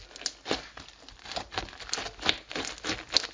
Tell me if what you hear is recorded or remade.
recorded